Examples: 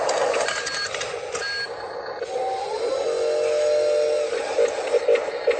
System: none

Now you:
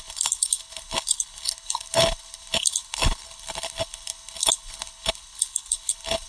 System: codec, HILCodec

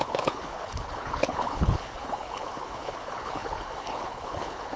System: codec, HILCodec